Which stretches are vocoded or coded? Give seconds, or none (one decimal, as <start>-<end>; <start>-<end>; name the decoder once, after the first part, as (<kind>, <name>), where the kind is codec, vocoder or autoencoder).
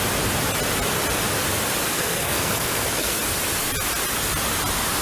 1.9-3.2 (codec, SNAC)